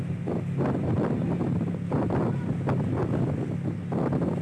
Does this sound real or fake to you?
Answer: real